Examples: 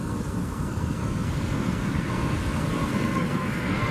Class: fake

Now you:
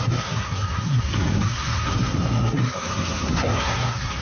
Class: fake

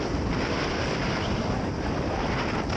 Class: real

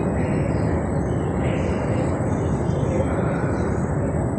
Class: real